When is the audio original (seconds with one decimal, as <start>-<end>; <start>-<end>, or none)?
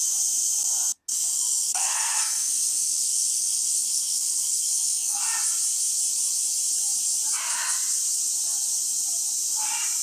0.0-1.1; 5.2-10.0